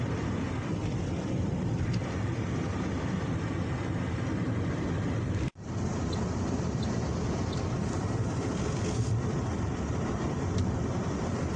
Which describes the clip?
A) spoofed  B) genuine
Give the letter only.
A